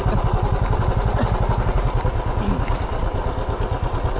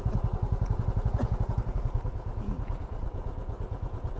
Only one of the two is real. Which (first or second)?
first